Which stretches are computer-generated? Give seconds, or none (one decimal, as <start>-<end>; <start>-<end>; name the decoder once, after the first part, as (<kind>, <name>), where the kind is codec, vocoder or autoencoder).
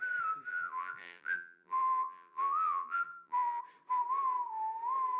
0.5-3.6 (vocoder, BigVGAN v2)